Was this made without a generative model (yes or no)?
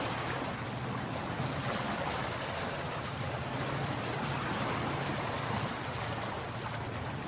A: yes